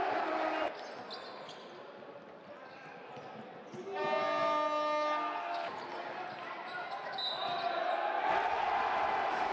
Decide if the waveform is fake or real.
real